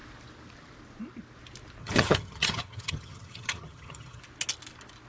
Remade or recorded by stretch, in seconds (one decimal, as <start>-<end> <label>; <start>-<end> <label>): 0.0-1.8 recorded; 1.8-4.2 remade; 4.2-5.1 recorded